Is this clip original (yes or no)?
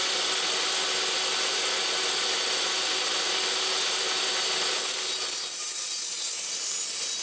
yes